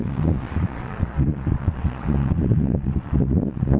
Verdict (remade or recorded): remade